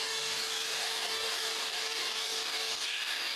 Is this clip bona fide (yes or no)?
no